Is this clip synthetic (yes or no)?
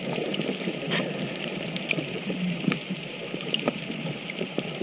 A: yes